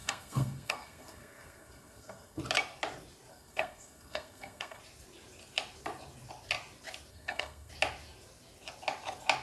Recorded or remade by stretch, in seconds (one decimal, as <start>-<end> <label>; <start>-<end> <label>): 0.0-2.4 remade; 2.4-3.3 recorded; 3.3-4.8 remade; 4.8-7.1 recorded; 7.1-7.7 remade; 7.7-9.4 recorded